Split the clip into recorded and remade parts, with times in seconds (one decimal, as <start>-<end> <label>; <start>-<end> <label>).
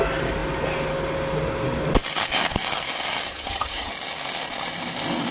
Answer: 0.0-3.3 recorded; 3.3-3.9 remade; 3.9-5.3 recorded